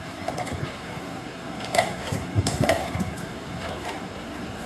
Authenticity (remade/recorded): remade